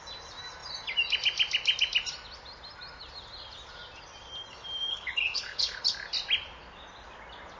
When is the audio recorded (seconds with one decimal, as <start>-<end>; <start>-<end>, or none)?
0.0-4.9; 5.8-7.6